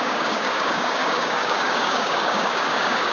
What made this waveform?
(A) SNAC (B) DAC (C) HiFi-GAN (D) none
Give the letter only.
B